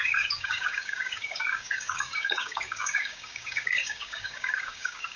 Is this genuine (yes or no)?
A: no